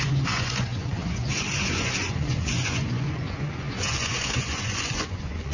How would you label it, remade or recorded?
remade